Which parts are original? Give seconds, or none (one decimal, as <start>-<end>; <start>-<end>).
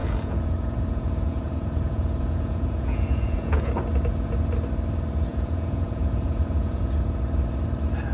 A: 3.7-5.3; 6.8-8.1